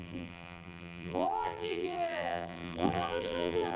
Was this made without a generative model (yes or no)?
no